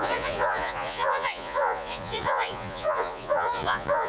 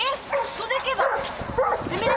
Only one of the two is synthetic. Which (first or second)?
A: first